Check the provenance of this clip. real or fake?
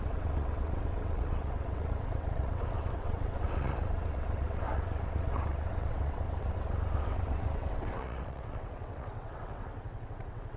fake